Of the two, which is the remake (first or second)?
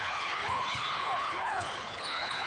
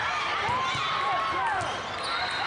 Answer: first